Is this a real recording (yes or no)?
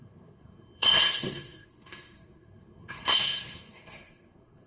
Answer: no